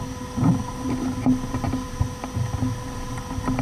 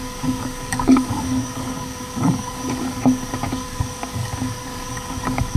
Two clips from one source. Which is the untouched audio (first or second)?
first